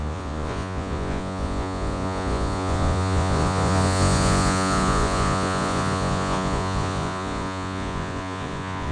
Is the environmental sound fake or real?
fake